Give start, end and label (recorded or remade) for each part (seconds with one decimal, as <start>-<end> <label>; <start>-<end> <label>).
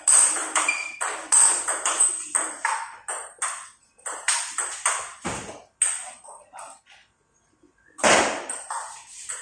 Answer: 0.0-9.4 recorded